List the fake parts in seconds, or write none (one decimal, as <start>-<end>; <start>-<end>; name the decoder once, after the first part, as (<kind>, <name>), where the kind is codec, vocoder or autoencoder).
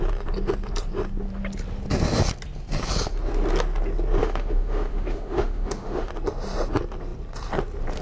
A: 4.2-6.1 (autoencoder, DAC-VAE)